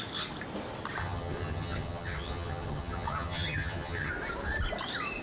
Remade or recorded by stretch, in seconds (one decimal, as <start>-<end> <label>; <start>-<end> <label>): 0.0-1.0 recorded; 1.0-4.1 remade; 4.1-5.2 recorded